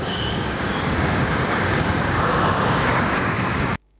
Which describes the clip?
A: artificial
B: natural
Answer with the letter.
A